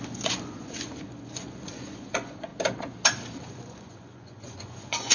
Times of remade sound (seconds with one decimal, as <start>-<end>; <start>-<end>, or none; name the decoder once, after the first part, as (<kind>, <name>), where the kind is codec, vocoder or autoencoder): 0.0-2.5 (vocoder, Vocos); 3.4-5.1